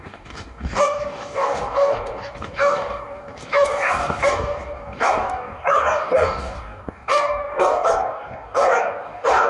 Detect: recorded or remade remade